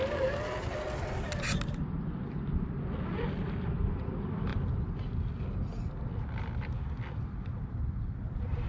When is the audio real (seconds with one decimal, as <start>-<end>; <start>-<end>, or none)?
0.0-8.7